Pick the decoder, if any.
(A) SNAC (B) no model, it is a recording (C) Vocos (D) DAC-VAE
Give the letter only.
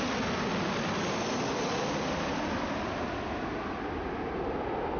B